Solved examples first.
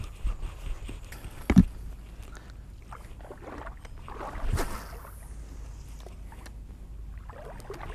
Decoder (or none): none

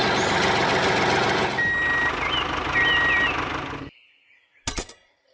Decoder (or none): none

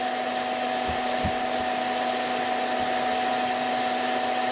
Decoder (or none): none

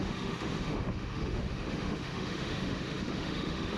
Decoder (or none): autoencoder, DAC-VAE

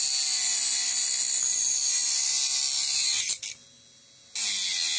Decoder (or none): none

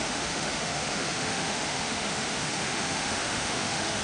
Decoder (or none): autoencoder, DAC-VAE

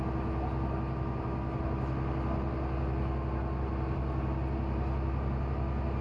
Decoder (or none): none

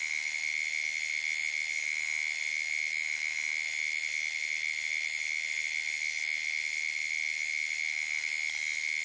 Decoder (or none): none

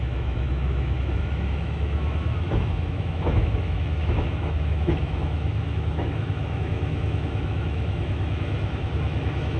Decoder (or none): autoencoder, DAC-VAE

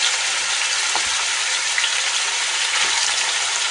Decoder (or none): none